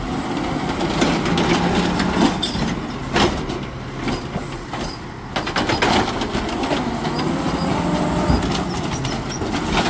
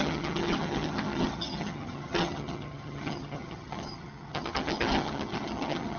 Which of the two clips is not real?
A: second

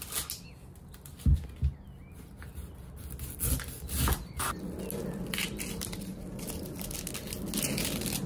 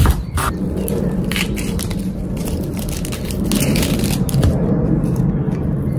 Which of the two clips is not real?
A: second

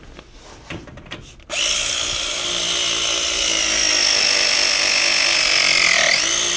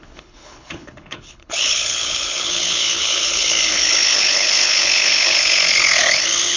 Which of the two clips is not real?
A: second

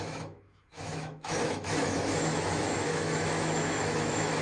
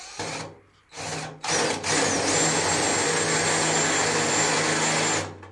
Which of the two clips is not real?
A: first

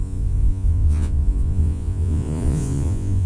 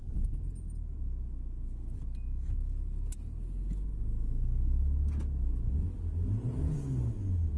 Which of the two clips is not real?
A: first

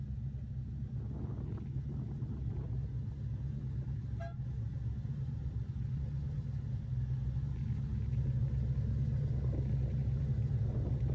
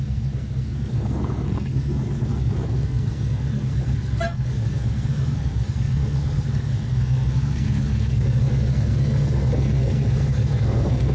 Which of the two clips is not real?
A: second